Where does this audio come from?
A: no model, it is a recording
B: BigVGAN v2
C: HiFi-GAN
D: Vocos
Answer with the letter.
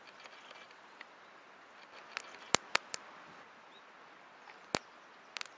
A